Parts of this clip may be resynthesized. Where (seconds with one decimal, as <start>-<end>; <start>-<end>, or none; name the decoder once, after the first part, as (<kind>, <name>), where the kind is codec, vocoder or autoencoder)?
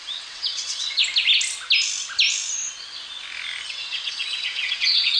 0.0-1.0 (vocoder, WaveNeXt); 3.7-5.2